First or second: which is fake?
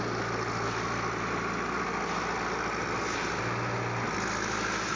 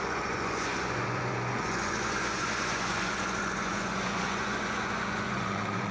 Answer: second